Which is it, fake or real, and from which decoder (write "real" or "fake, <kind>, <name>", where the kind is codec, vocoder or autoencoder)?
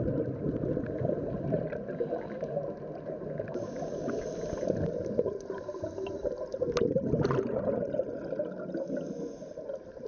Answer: real